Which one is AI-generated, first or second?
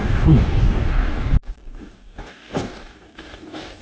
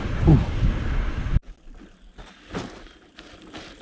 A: first